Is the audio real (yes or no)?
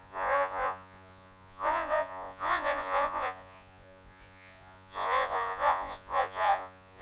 no